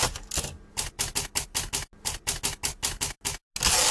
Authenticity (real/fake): real